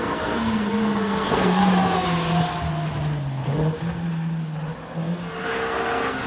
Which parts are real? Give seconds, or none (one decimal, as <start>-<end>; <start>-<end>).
1.6-5.4